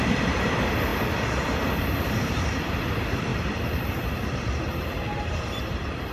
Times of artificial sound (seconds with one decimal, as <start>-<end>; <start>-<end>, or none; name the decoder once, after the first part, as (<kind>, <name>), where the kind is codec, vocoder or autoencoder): 0.0-0.9 (vocoder, BigVGAN v2); 2.2-6.1